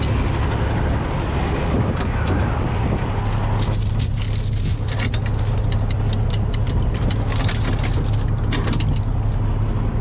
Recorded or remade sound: recorded